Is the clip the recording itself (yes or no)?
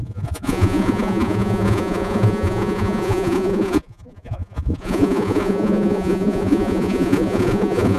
no